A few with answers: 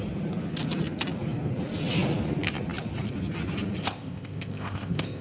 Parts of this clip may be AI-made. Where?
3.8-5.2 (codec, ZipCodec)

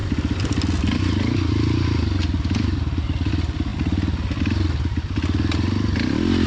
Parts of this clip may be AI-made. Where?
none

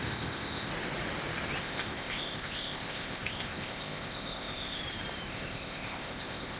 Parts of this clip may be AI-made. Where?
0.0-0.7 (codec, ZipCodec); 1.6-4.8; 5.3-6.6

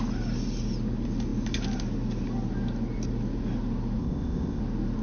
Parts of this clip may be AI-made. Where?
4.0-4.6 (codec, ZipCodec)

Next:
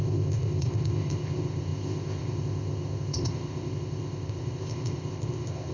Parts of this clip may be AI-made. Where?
0.0-5.7 (codec, ZipCodec)